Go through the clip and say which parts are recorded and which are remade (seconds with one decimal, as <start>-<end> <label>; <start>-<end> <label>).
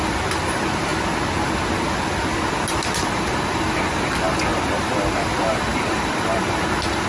0.0-4.5 recorded; 4.5-5.2 remade; 5.2-5.7 recorded; 5.7-7.1 remade